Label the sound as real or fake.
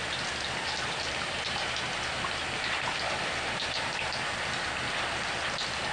real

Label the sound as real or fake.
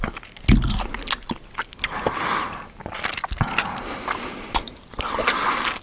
real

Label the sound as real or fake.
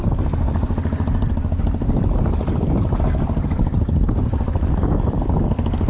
real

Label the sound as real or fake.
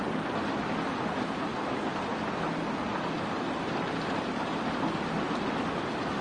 real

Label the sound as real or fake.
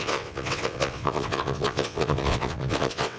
fake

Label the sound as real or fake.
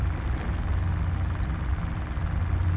real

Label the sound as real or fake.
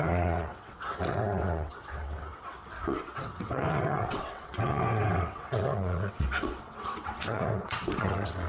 fake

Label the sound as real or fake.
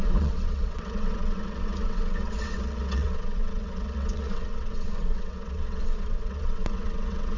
fake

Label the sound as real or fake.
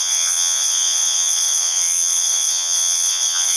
fake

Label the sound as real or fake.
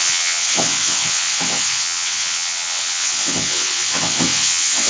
fake